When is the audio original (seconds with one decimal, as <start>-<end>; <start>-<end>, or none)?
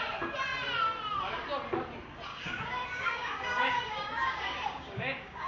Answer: 0.0-2.3